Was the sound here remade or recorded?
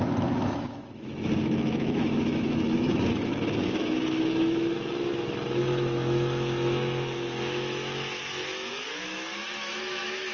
remade